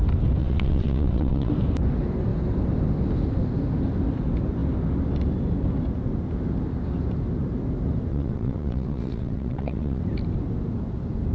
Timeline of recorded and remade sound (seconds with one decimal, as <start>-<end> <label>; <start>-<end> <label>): 0.0-0.4 recorded; 0.4-1.5 remade; 1.5-8.1 recorded; 8.1-10.0 remade; 10.0-11.3 recorded